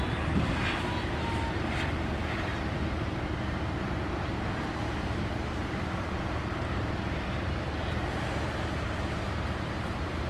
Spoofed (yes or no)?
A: yes